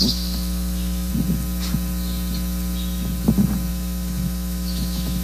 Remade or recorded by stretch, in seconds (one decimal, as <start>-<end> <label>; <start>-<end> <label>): 0.0-1.1 remade; 1.1-3.7 recorded; 3.7-5.2 remade